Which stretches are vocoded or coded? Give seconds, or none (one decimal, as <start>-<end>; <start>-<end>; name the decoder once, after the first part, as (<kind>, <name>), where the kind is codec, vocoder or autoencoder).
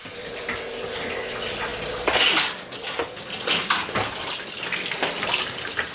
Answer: none